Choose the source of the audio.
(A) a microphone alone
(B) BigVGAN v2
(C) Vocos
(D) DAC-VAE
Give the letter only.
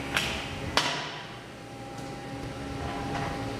A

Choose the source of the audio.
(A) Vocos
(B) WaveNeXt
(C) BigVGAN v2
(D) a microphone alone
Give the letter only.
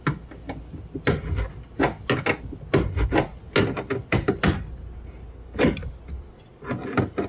D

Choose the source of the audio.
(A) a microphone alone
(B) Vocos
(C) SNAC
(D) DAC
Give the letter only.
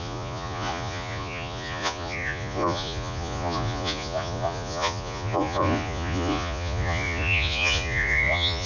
B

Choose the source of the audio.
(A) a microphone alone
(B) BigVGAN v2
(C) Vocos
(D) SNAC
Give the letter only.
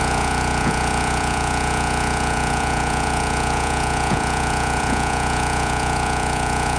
C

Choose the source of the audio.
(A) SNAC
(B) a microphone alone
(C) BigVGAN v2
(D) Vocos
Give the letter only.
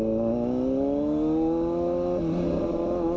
B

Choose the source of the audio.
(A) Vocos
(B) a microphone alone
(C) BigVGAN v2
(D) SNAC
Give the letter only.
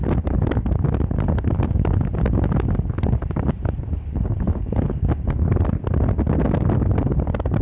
B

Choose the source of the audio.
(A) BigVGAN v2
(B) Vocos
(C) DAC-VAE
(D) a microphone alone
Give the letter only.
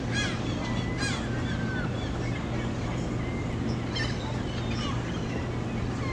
D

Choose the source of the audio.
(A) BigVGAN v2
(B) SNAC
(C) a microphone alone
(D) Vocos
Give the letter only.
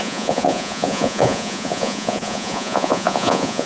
D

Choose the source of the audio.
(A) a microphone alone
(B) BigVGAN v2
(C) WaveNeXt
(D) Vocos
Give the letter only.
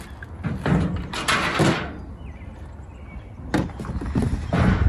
A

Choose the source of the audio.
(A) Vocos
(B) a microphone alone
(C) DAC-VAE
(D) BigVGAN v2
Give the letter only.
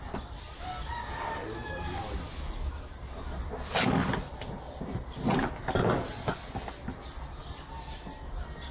B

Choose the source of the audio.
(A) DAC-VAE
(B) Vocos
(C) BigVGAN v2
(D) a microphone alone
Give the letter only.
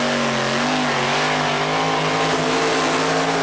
D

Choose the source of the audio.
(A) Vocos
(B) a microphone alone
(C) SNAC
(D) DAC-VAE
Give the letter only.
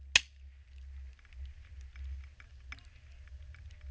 B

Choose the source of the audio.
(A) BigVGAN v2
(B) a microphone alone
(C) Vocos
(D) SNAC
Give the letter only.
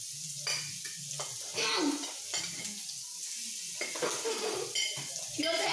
B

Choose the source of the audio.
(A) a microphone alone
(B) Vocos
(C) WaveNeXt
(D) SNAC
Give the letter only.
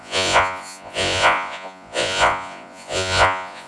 B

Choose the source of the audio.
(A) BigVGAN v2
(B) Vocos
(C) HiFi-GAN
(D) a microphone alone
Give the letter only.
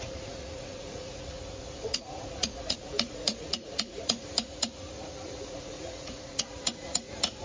B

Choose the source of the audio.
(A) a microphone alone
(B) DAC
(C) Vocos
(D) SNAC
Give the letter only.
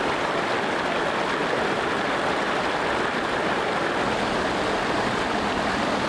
A